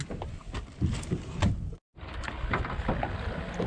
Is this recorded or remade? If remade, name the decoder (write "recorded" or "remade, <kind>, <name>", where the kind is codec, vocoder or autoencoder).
recorded